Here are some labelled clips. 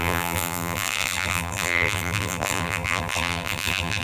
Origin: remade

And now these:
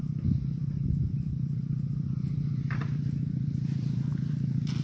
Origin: recorded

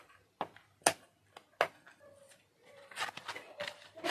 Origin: recorded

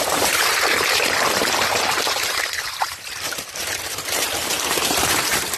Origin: remade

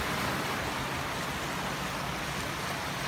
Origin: recorded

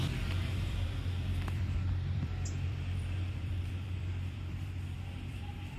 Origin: remade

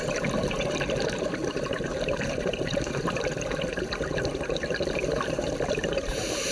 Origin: remade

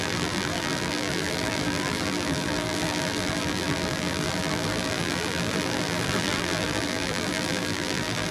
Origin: remade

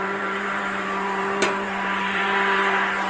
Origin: remade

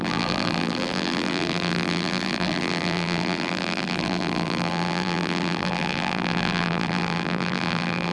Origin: remade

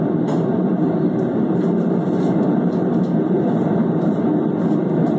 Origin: remade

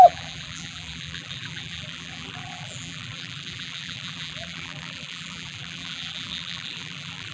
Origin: remade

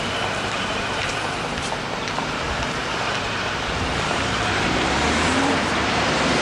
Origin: remade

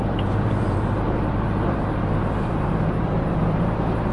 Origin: remade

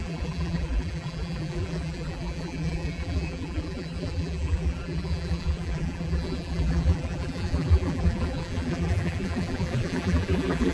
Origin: remade